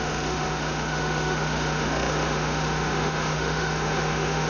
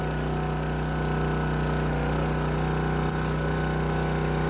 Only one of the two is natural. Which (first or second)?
second